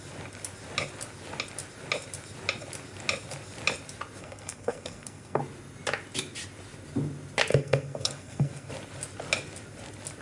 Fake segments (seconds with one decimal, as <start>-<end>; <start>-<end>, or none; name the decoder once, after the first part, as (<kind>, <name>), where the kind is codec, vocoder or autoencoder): 4.2-5.4 (codec, SNAC); 7.5-8.7